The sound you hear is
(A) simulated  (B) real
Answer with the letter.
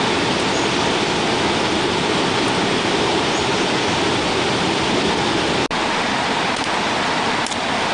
B